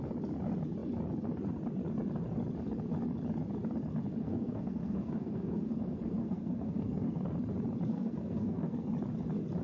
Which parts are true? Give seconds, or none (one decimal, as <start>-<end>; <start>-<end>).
0.0-4.2; 7.2-7.9; 8.9-9.6